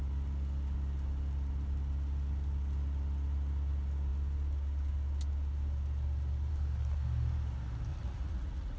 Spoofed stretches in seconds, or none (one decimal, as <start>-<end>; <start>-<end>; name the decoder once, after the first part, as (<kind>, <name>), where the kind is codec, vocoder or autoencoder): 7.9-8.8 (vocoder, Vocos)